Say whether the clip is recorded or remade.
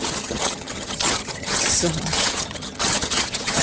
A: remade